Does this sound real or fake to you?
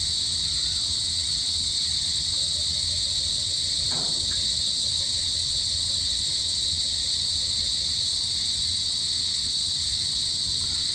fake